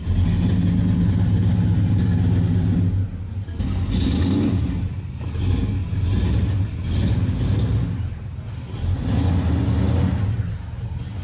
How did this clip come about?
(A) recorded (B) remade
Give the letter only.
A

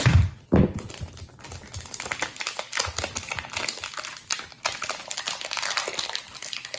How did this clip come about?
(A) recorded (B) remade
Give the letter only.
A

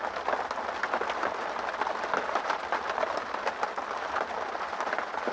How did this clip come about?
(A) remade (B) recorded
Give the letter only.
B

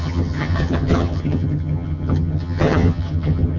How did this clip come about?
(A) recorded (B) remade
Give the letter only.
B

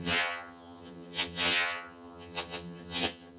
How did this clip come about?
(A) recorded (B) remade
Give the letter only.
B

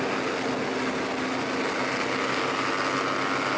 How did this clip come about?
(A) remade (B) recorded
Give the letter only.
B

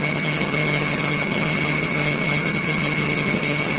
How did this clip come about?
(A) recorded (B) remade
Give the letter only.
B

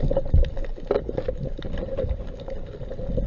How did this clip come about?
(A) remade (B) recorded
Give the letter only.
B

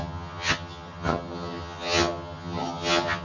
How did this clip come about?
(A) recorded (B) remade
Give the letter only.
B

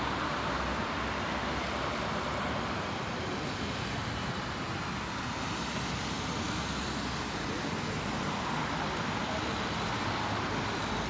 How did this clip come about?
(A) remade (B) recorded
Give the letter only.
B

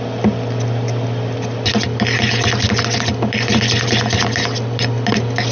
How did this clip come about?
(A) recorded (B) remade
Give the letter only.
A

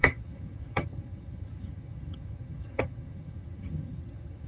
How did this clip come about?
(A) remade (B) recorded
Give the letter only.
A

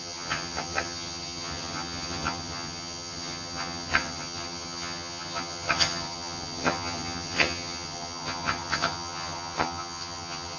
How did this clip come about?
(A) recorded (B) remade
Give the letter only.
B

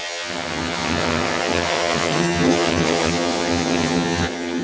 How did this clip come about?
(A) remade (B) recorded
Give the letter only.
A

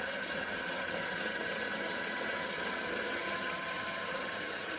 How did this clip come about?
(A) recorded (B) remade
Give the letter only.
B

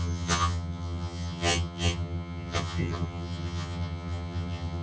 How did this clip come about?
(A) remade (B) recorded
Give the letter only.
A